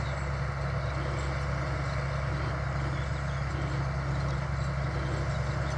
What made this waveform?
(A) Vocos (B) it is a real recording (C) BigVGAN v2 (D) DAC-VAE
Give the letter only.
B